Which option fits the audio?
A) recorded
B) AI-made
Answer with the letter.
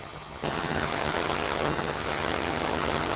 B